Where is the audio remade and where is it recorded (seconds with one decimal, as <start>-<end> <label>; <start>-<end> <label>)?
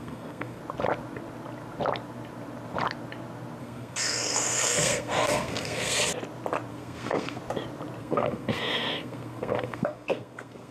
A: 0.0-0.6 remade; 0.6-3.6 recorded; 3.6-6.1 remade; 6.1-6.7 recorded; 6.7-7.4 remade; 7.4-8.0 recorded; 8.0-10.7 remade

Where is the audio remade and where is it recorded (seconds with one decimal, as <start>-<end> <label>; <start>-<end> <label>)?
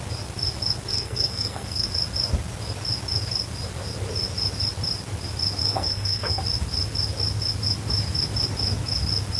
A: 0.0-0.9 recorded; 0.9-1.9 remade; 1.9-5.6 recorded; 5.6-6.4 remade; 6.4-9.4 recorded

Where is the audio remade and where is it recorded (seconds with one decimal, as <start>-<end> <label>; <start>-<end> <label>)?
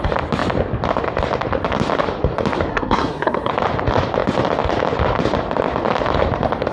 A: 0.0-2.7 recorded; 2.7-3.5 remade; 3.5-6.7 recorded